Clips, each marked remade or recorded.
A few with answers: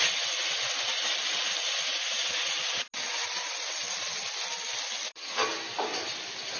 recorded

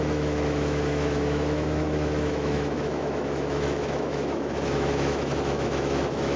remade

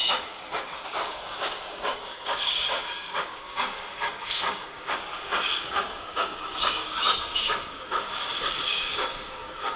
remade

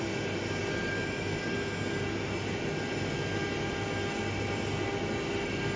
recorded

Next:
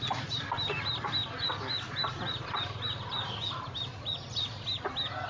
recorded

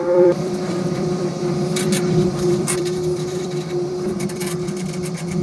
remade